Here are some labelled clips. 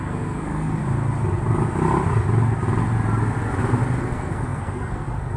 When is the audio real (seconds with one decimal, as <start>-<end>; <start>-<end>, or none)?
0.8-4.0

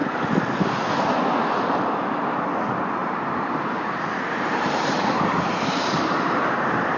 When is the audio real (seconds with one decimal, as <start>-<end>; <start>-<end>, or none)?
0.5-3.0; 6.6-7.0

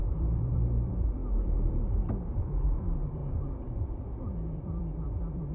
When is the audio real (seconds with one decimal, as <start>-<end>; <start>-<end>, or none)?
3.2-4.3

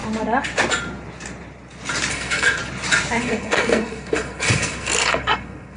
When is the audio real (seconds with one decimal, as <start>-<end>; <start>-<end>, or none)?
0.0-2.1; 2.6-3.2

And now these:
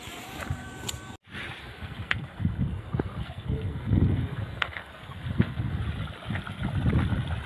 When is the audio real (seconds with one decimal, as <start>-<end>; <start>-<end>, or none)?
0.0-1.6; 5.8-7.5